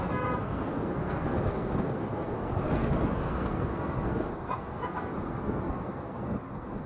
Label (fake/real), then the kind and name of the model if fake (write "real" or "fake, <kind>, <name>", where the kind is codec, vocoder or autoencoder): fake, codec, SNAC